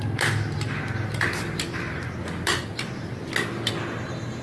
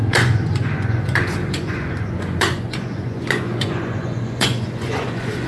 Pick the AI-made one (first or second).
second